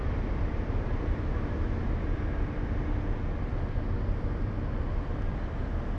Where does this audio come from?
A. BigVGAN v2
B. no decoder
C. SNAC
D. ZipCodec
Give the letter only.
B